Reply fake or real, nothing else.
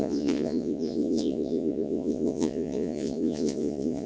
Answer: fake